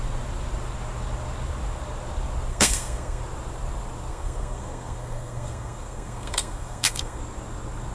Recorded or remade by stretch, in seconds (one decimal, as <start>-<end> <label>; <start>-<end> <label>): 0.0-2.5 recorded; 2.5-3.2 remade; 3.2-4.1 recorded; 4.1-7.2 remade; 7.2-7.9 recorded